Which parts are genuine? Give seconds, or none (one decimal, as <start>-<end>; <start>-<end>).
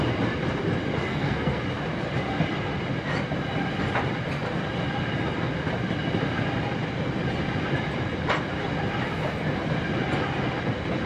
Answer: 0.0-1.1; 1.6-11.1